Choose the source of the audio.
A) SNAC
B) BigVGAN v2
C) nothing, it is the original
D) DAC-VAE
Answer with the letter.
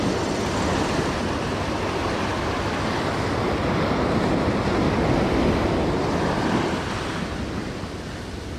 C